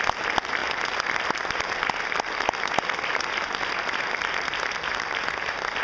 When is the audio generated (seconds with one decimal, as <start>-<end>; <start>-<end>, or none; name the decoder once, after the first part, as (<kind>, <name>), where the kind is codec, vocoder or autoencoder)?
none